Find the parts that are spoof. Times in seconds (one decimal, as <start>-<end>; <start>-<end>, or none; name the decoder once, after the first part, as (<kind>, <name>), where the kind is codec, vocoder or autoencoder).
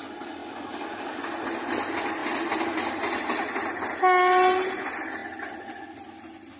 none